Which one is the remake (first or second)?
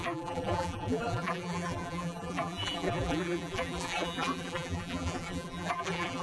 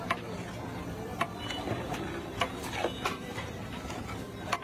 first